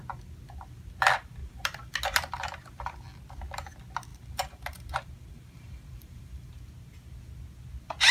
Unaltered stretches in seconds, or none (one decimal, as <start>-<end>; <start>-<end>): 0.0-1.4; 1.9-4.1; 6.5-8.1